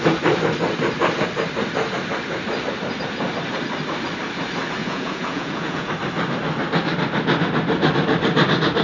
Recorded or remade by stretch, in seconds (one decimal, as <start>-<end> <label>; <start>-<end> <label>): 0.0-4.8 recorded; 4.8-5.9 remade; 5.9-8.8 recorded

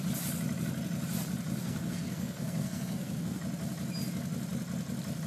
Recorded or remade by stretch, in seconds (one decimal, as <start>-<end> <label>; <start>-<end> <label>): 0.0-1.6 recorded; 1.6-3.4 remade; 3.4-5.3 recorded

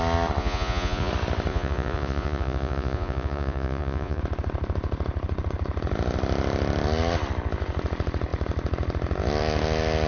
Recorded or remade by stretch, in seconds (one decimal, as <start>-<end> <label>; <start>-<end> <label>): 0.0-0.4 recorded; 0.4-1.1 remade; 1.1-1.5 recorded; 1.5-4.2 remade; 4.2-10.1 recorded

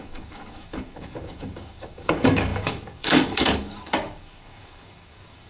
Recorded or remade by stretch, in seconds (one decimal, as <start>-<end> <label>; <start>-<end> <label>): 0.0-5.5 remade

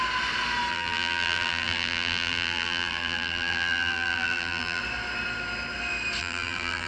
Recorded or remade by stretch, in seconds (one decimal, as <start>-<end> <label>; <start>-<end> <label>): 0.0-0.7 recorded; 0.7-4.8 remade; 4.8-6.2 recorded; 6.2-6.9 remade

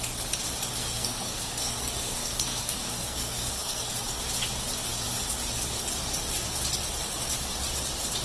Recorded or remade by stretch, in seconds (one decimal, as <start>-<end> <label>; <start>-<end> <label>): 0.0-0.8 recorded; 0.8-3.9 remade; 3.9-8.2 recorded

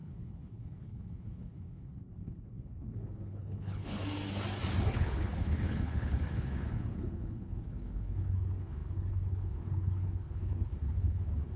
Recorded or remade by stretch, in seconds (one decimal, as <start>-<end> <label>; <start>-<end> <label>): 0.0-4.0 remade; 4.0-4.8 recorded; 4.8-11.6 remade